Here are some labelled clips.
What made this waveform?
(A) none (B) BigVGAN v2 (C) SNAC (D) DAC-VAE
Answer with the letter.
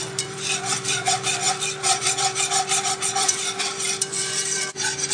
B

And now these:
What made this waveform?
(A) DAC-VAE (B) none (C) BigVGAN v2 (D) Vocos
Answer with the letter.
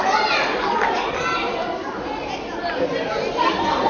B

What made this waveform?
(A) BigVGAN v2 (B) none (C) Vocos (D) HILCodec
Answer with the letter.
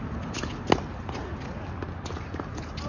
B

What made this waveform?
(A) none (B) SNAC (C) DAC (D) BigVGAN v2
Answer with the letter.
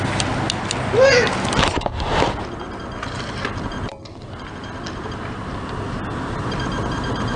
A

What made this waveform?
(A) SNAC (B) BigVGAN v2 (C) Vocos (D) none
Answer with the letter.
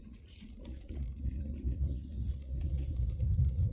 C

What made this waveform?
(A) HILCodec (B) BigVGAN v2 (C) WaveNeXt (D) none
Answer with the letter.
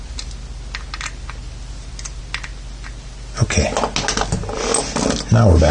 D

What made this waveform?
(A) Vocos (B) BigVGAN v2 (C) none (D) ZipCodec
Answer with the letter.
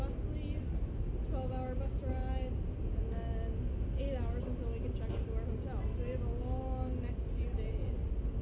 C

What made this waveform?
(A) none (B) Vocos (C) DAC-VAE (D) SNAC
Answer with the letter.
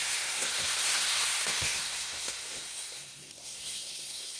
D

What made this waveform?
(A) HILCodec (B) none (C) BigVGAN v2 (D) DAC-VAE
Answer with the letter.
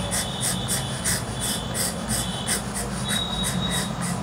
B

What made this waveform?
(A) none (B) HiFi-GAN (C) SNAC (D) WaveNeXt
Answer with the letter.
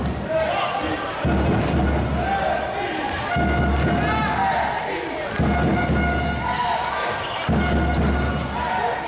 A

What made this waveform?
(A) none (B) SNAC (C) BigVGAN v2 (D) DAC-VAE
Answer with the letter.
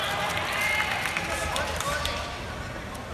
A